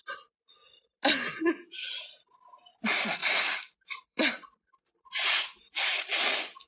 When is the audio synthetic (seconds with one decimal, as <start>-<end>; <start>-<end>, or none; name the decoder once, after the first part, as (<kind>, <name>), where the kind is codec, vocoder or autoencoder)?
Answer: 3.2-4.3 (vocoder, BigVGAN v2)